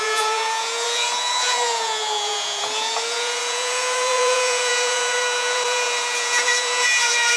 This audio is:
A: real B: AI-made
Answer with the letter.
B